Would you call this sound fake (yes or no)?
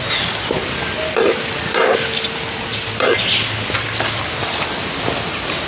no